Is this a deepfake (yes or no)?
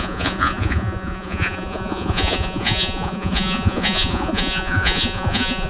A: yes